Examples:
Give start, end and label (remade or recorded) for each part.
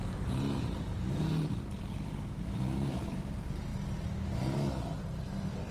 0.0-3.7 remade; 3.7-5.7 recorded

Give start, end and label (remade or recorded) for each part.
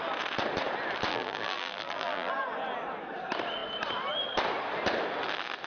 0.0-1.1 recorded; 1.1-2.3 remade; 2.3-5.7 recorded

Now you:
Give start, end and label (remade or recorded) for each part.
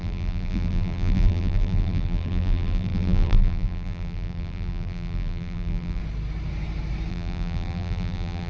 0.0-6.0 remade; 6.0-7.1 recorded; 7.1-8.5 remade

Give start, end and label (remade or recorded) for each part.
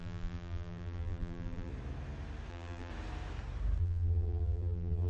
0.0-1.7 remade; 1.7-2.5 recorded; 2.5-2.9 remade; 2.9-3.8 recorded; 3.8-5.1 remade